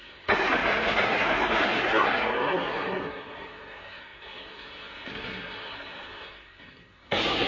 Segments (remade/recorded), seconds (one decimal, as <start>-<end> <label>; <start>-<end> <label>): 0.0-7.5 remade